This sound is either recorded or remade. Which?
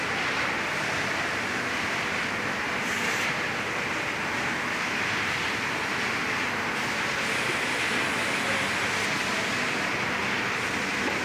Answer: recorded